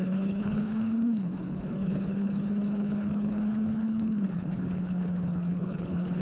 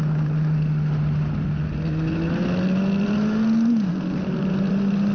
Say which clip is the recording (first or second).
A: second